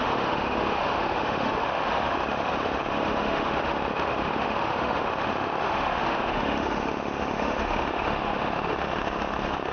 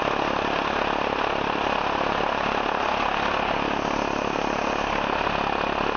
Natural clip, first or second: second